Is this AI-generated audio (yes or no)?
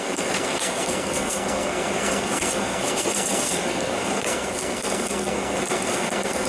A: yes